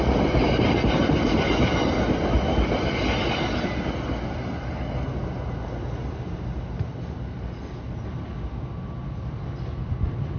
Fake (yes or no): no